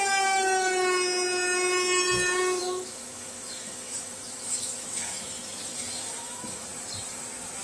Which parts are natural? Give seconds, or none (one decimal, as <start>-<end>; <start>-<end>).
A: 0.0-2.6; 6.7-7.6